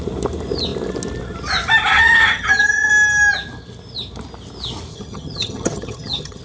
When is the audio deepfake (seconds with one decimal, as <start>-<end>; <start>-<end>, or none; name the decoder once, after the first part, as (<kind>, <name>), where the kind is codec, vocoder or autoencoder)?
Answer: 1.9-2.9 (vocoder, HiFi-GAN); 4.9-6.4